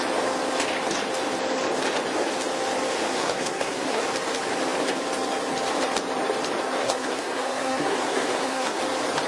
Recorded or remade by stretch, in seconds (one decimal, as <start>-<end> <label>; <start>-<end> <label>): 0.0-3.1 recorded; 3.1-4.0 remade; 4.0-6.8 recorded; 6.8-8.8 remade; 8.8-9.3 recorded